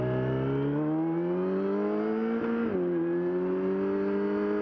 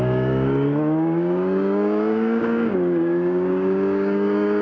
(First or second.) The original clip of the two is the first